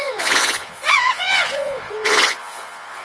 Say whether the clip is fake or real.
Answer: fake